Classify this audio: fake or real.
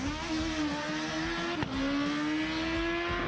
real